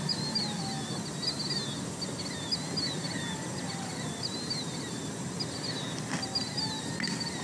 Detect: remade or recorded recorded